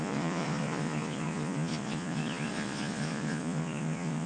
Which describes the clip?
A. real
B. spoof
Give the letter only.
B